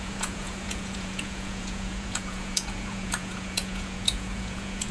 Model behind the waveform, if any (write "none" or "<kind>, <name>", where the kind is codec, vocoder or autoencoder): vocoder, Vocos